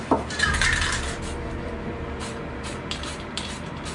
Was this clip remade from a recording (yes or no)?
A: yes